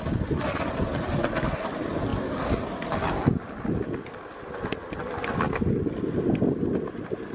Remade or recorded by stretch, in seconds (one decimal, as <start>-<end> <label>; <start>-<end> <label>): 0.0-7.3 recorded